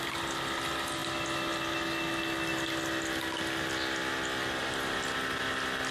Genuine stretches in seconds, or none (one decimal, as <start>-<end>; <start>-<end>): 0.0-5.9